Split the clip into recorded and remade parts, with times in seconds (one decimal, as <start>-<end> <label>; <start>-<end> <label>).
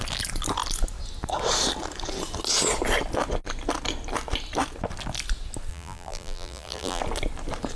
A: 0.0-5.7 recorded; 5.7-7.0 remade; 7.0-7.8 recorded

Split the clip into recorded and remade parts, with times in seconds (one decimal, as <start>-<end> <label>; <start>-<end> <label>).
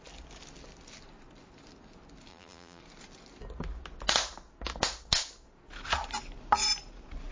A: 0.0-2.3 recorded; 2.3-2.8 remade; 2.8-7.3 recorded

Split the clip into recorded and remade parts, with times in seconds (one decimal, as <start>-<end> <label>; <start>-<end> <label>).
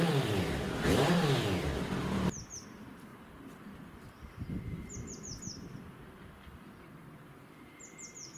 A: 0.0-8.4 remade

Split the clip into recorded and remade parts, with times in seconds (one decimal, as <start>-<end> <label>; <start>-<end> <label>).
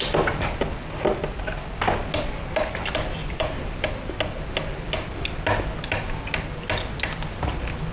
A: 0.0-3.2 recorded; 3.2-3.9 remade; 3.9-7.9 recorded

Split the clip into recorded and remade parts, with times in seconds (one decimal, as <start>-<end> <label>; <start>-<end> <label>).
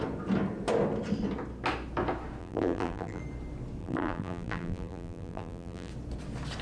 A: 0.0-2.4 recorded; 2.4-3.2 remade; 3.2-3.8 recorded; 3.8-5.9 remade; 5.9-6.6 recorded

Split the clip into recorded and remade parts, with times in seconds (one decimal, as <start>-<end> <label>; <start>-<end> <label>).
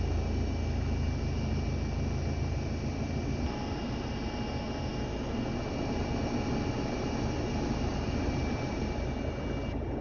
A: 0.0-7.9 recorded; 7.9-9.6 remade; 9.6-10.0 recorded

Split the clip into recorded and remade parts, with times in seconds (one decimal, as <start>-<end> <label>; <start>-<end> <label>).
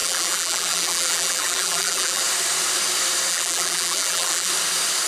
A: 0.0-2.2 remade; 2.2-3.3 recorded; 3.3-4.5 remade; 4.5-5.1 recorded